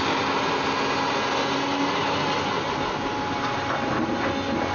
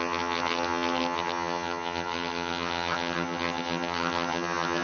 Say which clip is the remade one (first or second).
second